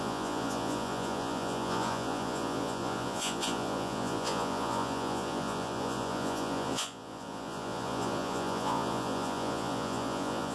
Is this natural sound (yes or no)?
no